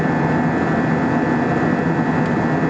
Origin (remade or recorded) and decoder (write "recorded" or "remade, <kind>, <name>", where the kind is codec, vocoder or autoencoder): recorded